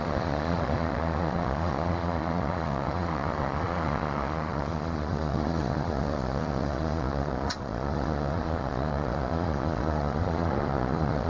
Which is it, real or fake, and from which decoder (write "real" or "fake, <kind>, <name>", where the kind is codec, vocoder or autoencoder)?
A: fake, vocoder, Vocos